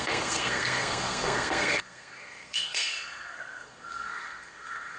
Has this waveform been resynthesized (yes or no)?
yes